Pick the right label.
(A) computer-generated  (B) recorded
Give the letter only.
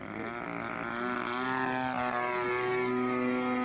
B